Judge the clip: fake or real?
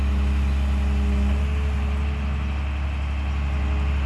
real